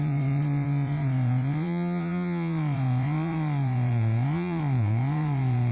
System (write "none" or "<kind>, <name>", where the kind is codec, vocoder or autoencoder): vocoder, Vocos